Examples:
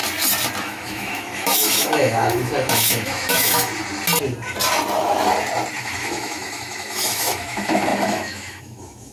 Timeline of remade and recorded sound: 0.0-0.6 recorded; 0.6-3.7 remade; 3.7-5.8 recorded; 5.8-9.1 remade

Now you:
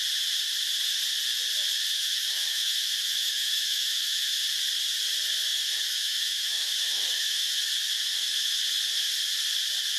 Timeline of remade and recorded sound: 0.0-1.9 recorded; 1.9-4.4 remade; 4.4-5.5 recorded; 5.5-7.6 remade; 7.6-8.1 recorded; 8.1-8.6 remade; 8.6-10.0 recorded

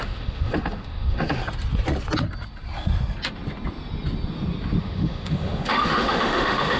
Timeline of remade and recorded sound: 0.0-1.4 remade; 1.4-4.8 recorded; 4.8-6.8 remade

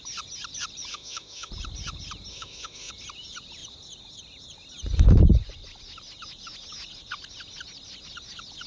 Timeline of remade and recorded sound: 0.0-0.9 recorded; 0.9-1.5 remade; 1.5-2.3 recorded; 2.3-2.9 remade; 2.9-8.7 recorded

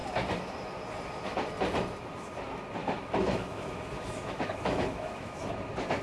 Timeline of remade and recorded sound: 0.0-2.8 recorded; 2.8-5.5 remade; 5.5-6.0 recorded

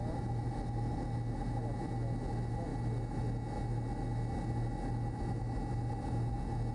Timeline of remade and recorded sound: 0.0-6.7 recorded